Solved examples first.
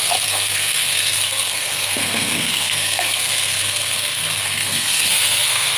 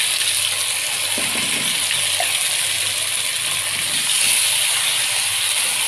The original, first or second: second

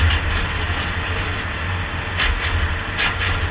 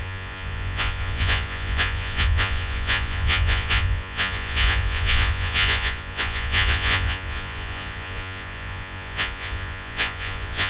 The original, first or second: first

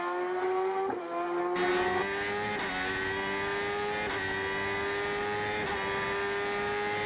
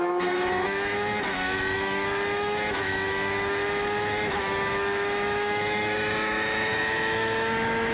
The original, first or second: first